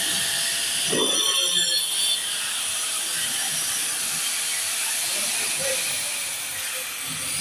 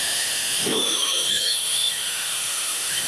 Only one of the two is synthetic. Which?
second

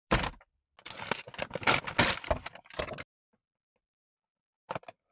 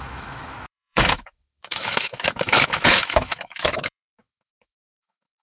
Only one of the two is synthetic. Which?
second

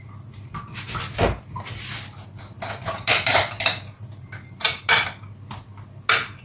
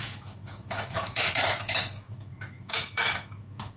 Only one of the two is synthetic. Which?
second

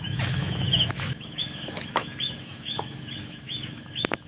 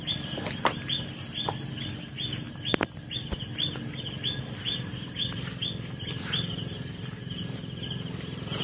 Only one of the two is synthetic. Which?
first